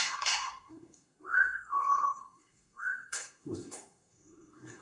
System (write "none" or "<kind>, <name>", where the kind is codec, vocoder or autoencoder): codec, SNAC